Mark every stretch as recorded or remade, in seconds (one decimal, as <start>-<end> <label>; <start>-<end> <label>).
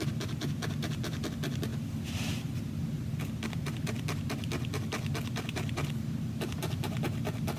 0.0-7.6 recorded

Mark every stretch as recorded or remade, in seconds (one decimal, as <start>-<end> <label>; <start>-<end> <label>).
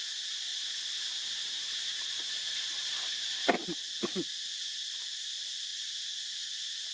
0.0-0.5 remade; 0.5-1.4 recorded; 1.4-6.9 remade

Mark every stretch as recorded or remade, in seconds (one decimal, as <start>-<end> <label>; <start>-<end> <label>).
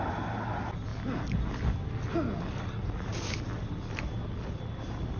0.0-5.2 recorded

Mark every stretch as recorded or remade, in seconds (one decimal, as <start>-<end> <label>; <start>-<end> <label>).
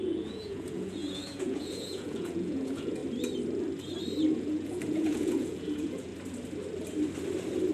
0.0-3.0 remade; 3.0-4.3 recorded; 4.3-6.1 remade; 6.1-7.7 recorded